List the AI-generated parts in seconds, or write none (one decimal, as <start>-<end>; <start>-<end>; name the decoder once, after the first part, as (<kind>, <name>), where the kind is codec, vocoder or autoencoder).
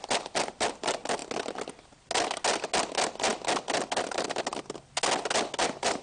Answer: none